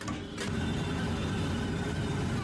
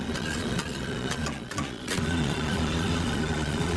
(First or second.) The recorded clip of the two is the first